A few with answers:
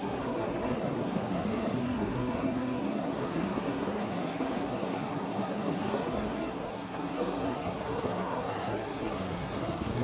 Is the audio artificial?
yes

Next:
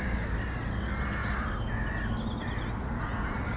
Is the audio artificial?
no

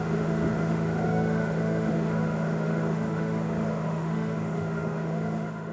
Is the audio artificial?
yes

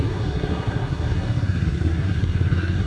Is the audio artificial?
yes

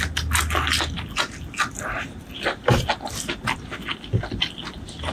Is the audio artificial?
no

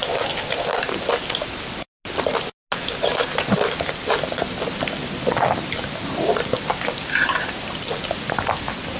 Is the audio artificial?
no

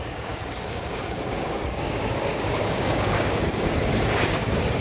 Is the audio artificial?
yes